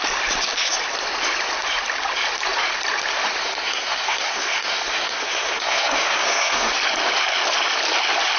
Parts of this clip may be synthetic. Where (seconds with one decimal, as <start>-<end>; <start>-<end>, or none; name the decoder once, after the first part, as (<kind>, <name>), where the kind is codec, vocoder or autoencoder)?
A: 3.4-6.7 (codec, SNAC)